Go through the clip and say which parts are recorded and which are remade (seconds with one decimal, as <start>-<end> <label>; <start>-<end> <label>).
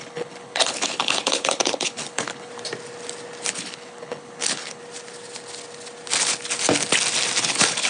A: 0.0-2.5 remade; 2.5-3.5 recorded; 3.5-4.8 remade; 4.8-7.4 recorded; 7.4-7.9 remade